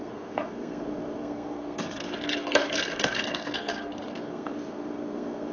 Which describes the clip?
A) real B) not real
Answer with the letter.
B